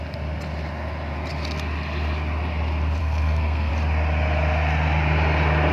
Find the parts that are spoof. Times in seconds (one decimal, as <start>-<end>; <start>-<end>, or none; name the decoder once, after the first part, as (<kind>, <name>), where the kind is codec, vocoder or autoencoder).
3.0-3.7 (codec, SNAC)